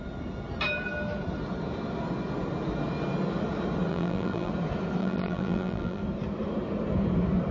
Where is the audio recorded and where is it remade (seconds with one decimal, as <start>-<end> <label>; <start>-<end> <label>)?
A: 0.0-3.9 recorded; 3.9-4.5 remade; 4.5-5.0 recorded; 5.0-6.0 remade; 6.0-7.5 recorded